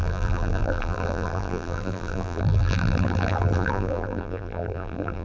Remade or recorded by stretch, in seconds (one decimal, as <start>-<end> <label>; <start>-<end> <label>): 0.0-5.2 remade